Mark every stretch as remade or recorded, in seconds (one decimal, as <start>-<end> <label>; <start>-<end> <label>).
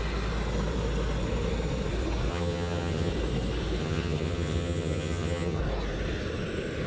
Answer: 0.0-2.3 recorded; 2.3-3.1 remade; 3.1-3.8 recorded; 3.8-5.6 remade; 5.6-6.9 recorded